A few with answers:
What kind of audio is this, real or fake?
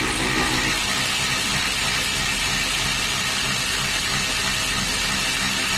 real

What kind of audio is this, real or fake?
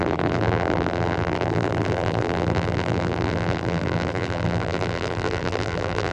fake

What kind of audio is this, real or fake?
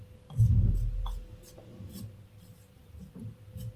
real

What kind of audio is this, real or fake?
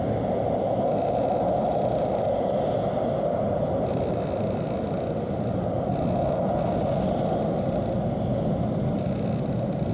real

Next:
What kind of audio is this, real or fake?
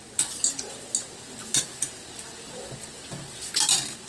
real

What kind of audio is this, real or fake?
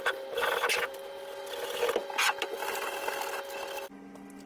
real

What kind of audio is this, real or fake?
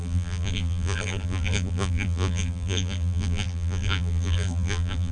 fake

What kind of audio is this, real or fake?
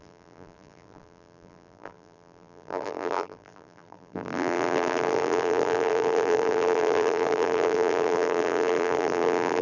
fake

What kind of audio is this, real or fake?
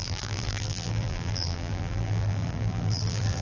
fake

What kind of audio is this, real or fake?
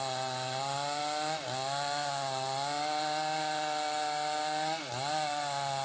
real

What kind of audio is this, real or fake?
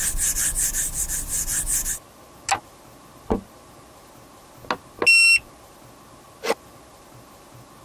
real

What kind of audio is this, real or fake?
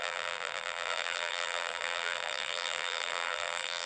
fake